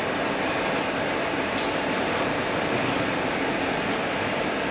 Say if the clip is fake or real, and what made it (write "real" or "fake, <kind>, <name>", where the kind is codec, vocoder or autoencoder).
real